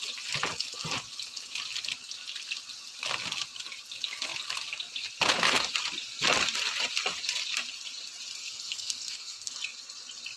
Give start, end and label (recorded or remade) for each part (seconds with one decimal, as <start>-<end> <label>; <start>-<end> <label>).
0.0-8.4 recorded; 8.4-9.5 remade; 9.5-10.4 recorded

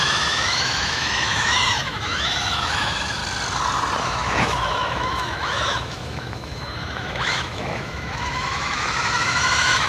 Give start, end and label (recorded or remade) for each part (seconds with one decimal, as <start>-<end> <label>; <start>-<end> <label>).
0.0-3.2 remade; 3.2-4.0 recorded; 4.0-9.9 remade

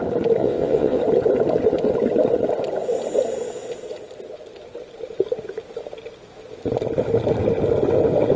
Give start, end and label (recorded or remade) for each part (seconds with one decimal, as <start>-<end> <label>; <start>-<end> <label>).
0.0-0.4 recorded; 0.4-1.0 remade; 1.0-8.4 recorded

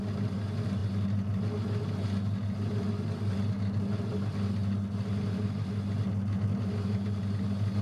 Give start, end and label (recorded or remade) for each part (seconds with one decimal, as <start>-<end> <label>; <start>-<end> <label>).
0.0-7.8 recorded